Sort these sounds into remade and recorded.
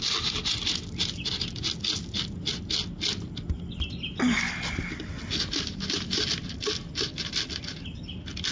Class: recorded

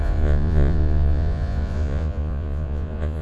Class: remade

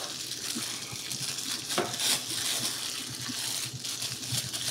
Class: recorded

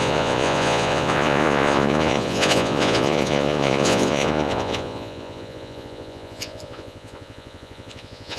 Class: remade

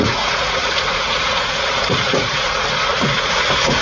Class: remade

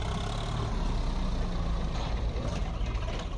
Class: recorded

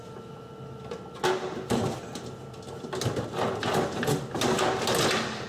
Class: recorded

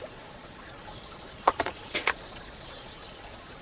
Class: remade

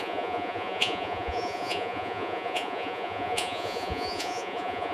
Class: remade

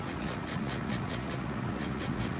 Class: remade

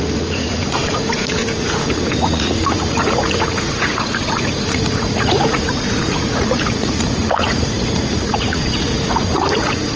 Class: remade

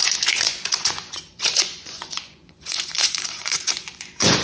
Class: remade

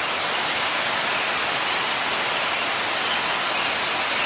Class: recorded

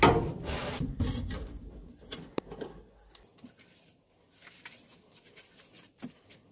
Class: recorded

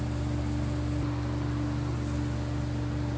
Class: recorded